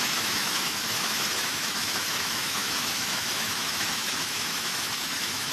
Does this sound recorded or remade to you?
remade